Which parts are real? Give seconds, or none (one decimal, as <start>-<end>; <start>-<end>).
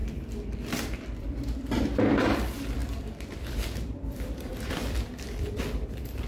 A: none